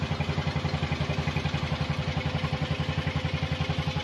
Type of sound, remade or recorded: recorded